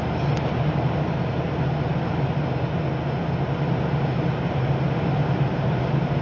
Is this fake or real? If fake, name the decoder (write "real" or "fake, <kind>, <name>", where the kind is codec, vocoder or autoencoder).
real